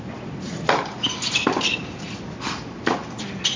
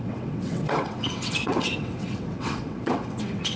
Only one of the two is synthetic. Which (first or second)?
second